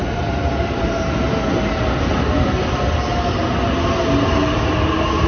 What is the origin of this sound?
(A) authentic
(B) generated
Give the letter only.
A